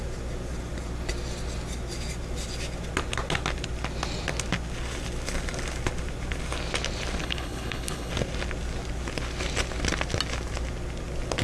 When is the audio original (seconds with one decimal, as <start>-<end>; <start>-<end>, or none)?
0.0-7.2; 8.1-11.4